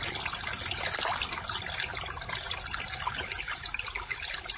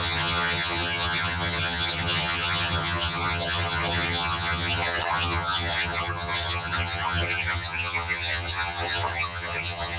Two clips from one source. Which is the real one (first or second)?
first